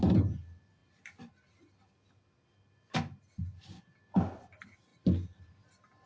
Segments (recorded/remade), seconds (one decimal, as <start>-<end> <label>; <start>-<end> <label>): 0.0-6.1 recorded